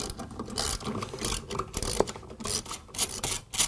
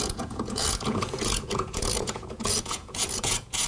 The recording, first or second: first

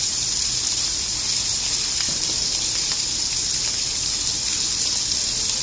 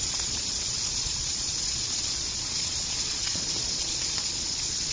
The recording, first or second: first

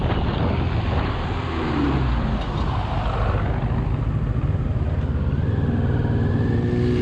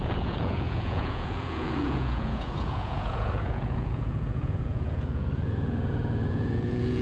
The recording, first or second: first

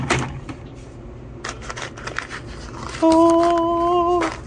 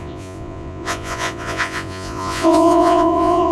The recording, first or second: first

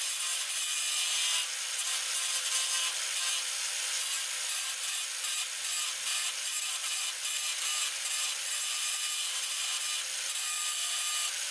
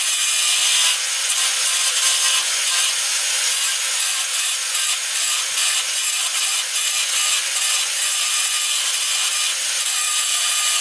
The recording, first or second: first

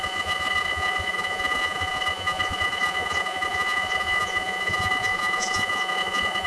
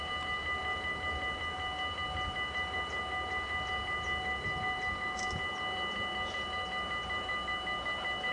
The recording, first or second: second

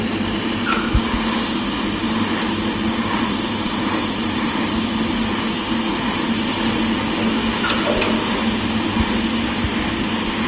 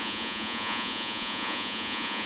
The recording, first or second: first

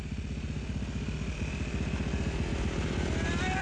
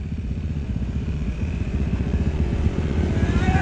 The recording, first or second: first